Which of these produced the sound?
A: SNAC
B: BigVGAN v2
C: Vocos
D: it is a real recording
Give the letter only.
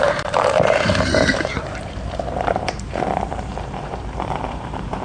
B